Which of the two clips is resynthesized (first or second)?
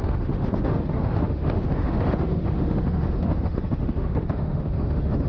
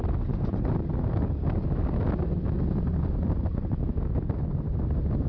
first